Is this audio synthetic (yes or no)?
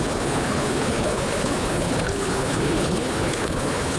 yes